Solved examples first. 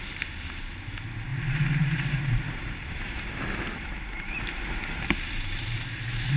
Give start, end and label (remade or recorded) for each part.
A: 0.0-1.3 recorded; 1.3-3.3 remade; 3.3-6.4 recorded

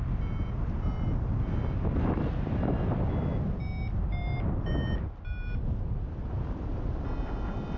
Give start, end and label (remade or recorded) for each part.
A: 0.0-7.8 recorded

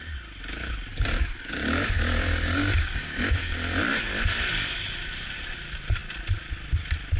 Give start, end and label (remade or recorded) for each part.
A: 0.0-0.9 recorded; 0.9-3.8 remade; 3.8-7.2 recorded

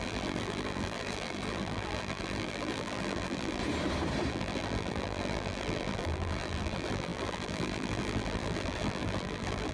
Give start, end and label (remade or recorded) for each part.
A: 0.0-3.6 remade; 3.6-4.3 recorded; 4.3-9.7 remade

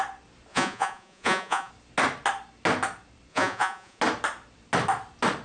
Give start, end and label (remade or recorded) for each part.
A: 0.0-0.5 recorded; 0.5-1.7 remade; 1.7-3.3 recorded; 3.3-4.0 remade; 4.0-5.4 recorded

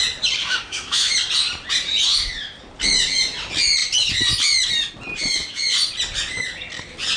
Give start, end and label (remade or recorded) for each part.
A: 0.0-0.4 recorded; 0.4-1.1 remade; 1.1-7.2 recorded